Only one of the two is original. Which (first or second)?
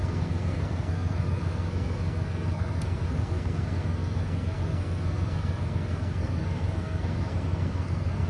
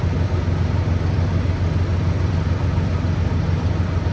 second